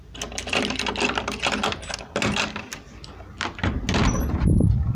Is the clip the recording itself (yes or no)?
yes